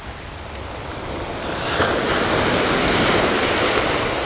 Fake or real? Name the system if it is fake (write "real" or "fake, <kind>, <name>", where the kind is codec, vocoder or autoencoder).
real